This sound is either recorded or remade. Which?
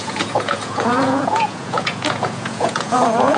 remade